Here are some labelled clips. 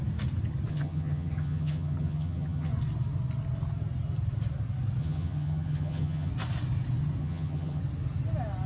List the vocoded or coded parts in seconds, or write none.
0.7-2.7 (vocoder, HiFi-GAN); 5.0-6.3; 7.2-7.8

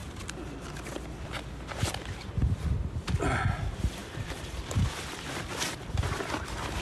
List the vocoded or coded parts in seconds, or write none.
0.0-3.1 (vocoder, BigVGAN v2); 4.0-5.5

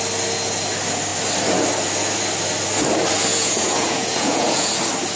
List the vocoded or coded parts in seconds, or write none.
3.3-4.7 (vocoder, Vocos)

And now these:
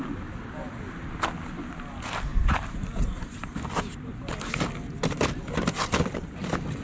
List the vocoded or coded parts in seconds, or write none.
2.3-4.5 (vocoder, BigVGAN v2)

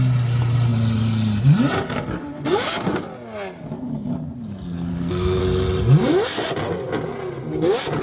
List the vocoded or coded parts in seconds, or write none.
4.9-5.4 (codec, SNAC)